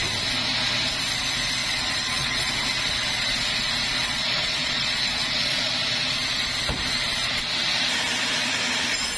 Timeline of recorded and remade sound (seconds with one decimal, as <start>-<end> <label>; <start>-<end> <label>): 0.0-1.6 recorded; 1.6-2.5 remade; 2.5-4.0 recorded; 4.0-5.7 remade; 5.7-9.2 recorded